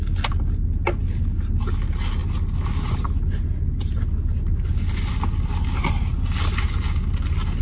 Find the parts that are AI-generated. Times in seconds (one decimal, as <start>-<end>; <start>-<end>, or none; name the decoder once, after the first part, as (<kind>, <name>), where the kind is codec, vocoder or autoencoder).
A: none